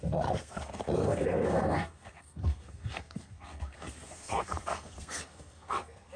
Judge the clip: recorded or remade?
remade